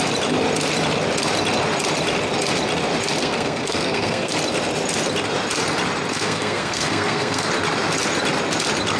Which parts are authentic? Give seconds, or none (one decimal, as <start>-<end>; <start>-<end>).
0.0-3.2; 4.3-6.1; 7.5-9.0